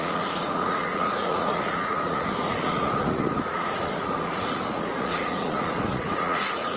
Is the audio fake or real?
fake